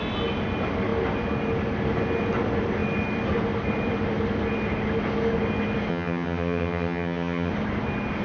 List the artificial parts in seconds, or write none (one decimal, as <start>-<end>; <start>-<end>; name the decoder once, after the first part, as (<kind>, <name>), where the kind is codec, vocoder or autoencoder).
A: 5.9-7.5 (vocoder, HiFi-GAN)